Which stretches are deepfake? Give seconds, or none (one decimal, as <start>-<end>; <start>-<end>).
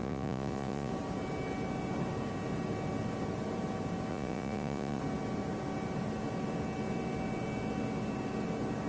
0.0-0.9; 4.1-5.0